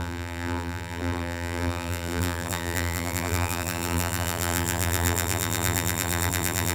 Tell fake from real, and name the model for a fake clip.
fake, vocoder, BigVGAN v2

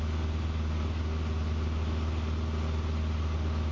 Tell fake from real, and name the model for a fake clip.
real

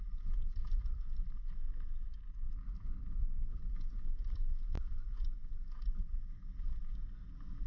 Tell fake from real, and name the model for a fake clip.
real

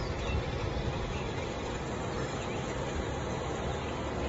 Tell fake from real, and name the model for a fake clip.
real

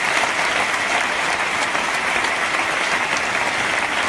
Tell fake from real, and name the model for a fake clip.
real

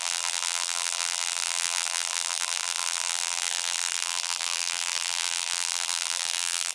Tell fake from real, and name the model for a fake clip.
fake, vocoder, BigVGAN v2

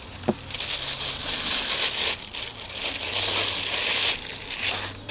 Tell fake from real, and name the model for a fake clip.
real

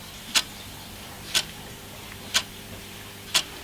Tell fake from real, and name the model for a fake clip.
fake, vocoder, BigVGAN v2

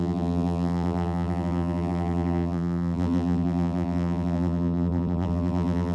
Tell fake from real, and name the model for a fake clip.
fake, vocoder, BigVGAN v2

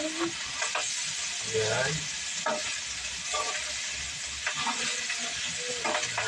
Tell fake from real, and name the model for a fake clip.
real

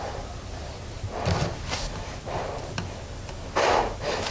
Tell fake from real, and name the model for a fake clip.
real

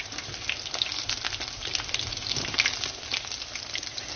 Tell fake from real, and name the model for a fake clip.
real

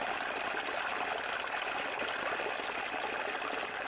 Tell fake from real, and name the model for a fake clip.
real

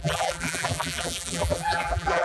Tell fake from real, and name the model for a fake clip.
fake, vocoder, BigVGAN v2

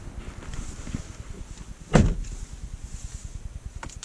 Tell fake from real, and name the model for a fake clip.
real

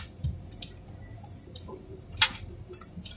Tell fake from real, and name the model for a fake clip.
fake, vocoder, BigVGAN v2